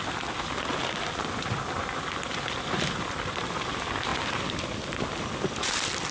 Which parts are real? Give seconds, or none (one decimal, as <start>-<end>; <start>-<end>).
0.0-1.2; 1.8-4.1; 4.7-6.1